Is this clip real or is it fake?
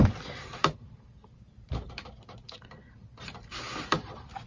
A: fake